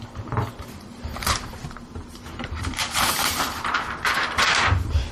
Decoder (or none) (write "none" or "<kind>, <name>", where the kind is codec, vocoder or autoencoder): vocoder, BigVGAN v2